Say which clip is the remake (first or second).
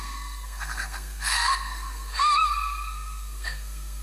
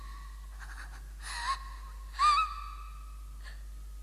first